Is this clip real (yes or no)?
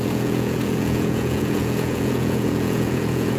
no